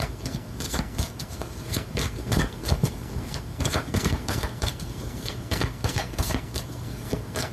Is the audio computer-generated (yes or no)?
yes